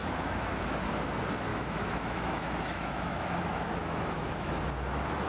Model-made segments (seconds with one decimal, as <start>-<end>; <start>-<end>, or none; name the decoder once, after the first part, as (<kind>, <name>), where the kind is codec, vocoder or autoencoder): 0.0-0.6 (autoencoder, DAC-VAE); 1.5-4.6